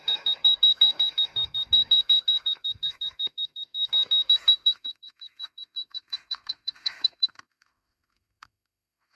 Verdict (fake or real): fake